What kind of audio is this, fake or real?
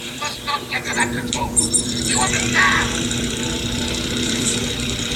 fake